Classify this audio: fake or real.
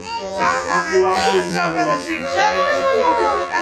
fake